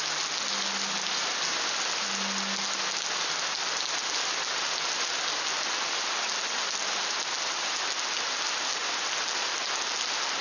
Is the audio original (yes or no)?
yes